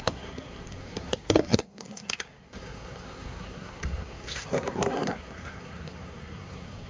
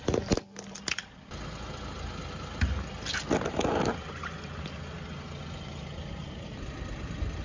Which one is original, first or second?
second